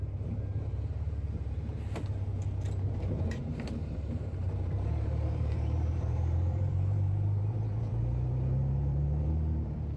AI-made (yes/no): yes